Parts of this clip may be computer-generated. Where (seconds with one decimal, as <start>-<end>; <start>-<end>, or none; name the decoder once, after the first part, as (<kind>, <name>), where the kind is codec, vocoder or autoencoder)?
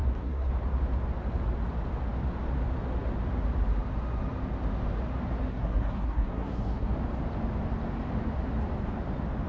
0.0-0.5 (codec, SNAC); 5.5-6.9